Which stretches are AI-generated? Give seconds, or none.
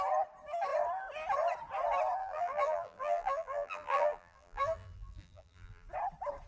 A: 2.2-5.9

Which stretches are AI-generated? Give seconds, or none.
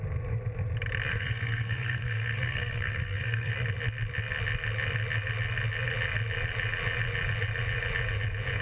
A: 1.1-3.5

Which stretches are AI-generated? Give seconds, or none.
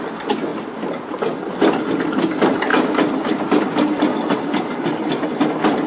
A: 2.7-3.7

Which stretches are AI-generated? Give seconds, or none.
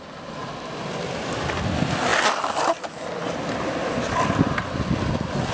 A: none